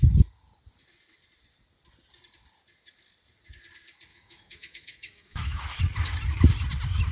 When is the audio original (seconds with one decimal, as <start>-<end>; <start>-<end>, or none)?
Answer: 0.0-4.1; 5.8-7.1